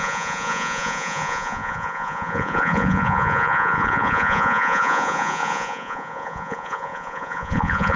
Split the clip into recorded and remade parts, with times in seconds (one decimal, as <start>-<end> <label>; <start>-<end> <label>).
0.0-8.0 remade